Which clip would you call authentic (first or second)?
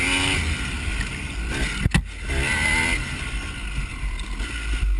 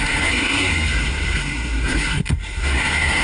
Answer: first